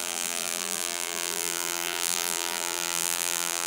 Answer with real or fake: fake